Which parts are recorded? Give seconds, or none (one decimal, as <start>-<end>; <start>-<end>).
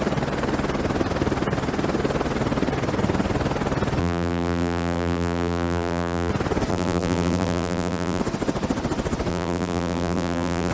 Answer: 0.0-4.0; 6.3-6.7; 8.2-9.3